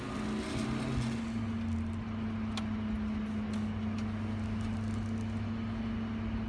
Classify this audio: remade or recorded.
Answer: recorded